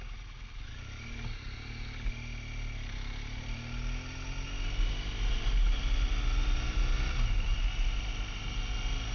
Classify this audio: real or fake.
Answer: real